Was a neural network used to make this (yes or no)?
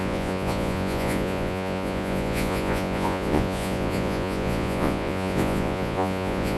yes